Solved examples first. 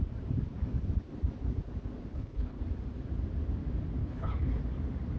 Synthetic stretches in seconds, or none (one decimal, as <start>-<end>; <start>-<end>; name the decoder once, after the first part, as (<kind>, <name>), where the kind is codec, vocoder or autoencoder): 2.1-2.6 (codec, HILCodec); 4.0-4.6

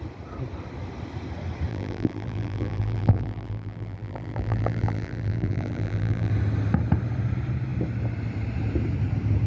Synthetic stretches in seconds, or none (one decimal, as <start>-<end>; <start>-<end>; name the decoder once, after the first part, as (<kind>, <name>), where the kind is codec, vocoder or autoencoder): 1.7-6.3 (vocoder, BigVGAN v2)

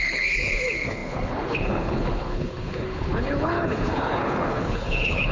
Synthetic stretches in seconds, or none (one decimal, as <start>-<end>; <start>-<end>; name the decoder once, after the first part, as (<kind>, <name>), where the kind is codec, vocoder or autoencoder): 0.0-5.3 (codec, HILCodec)

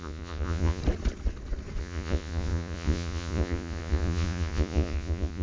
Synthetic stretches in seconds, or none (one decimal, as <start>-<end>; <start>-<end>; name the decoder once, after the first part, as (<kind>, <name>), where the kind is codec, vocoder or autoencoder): 0.0-0.8 (vocoder, Vocos); 1.8-5.4

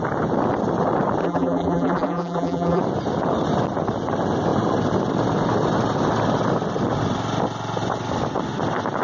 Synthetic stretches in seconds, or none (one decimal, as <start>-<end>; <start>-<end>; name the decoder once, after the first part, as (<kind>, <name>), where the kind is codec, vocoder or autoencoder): 1.2-2.8 (vocoder, BigVGAN v2)

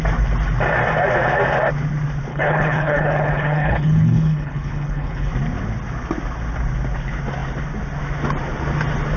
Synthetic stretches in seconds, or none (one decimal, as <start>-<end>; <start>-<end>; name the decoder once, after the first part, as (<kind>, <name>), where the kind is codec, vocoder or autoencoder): 2.3-5.3 (codec, HILCodec)

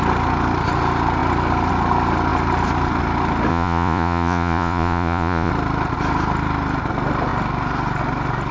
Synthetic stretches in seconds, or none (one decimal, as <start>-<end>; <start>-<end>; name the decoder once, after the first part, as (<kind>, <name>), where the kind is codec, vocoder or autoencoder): 3.5-5.5 (vocoder, Vocos)